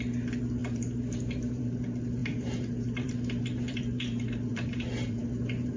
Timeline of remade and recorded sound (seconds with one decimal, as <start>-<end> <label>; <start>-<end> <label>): 0.0-0.6 recorded; 0.6-1.6 remade; 1.6-2.2 recorded; 2.2-5.8 remade

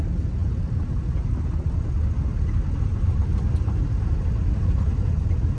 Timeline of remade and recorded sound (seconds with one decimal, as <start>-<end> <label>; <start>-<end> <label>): 0.0-3.3 recorded; 3.3-4.8 remade; 4.8-5.6 recorded

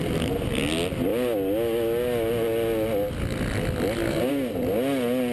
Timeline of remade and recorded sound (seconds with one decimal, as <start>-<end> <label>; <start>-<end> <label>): 0.0-5.3 recorded

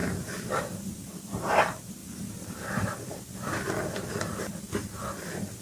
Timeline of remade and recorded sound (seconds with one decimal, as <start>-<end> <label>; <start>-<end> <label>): 0.0-0.6 remade; 0.6-2.0 recorded; 2.0-4.6 remade; 4.6-5.6 recorded

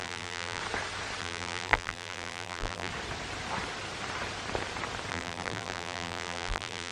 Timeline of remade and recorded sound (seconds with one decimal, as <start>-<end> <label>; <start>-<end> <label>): 0.0-0.6 remade; 0.6-1.2 recorded; 1.2-2.9 remade; 2.9-5.1 recorded; 5.1-6.9 remade

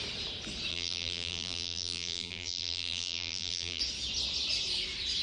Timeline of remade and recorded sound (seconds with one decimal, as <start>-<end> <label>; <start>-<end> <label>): 0.0-0.7 recorded; 0.7-3.8 remade; 3.8-5.2 recorded